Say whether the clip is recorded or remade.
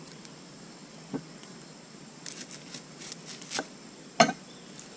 recorded